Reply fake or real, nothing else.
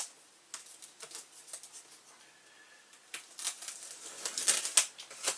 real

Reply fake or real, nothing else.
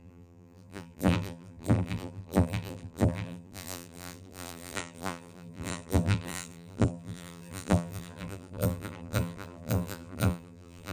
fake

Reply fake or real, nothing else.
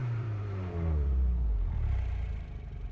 fake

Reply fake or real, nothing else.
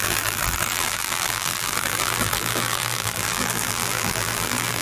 fake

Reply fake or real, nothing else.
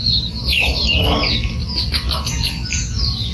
real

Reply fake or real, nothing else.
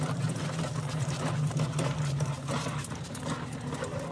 real